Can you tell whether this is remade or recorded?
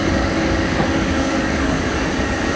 remade